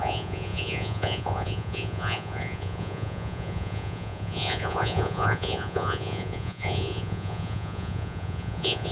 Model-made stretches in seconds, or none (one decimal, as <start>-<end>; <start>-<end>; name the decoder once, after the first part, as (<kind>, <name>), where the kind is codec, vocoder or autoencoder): 0.0-8.9 (vocoder, Vocos)